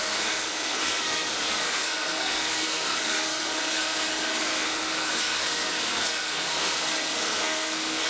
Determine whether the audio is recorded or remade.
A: remade